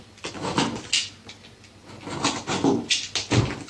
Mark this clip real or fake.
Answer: real